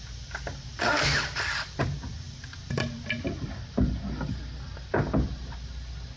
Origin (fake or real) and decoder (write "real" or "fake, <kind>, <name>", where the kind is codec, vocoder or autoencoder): real